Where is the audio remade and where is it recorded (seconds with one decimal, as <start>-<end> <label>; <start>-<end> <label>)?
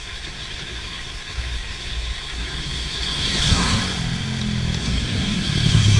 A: 0.0-3.8 remade; 3.8-4.8 recorded; 4.8-6.0 remade